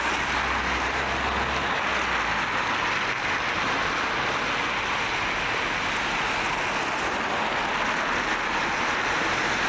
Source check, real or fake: real